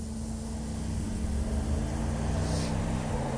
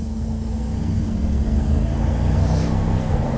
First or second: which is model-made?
second